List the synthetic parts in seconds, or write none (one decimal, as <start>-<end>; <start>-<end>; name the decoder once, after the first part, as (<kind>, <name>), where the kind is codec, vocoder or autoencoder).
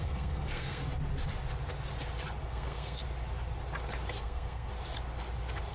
0.0-0.8 (codec, SNAC); 2.4-3.0; 4.2-4.7